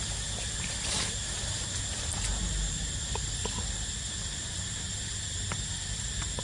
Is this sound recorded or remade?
recorded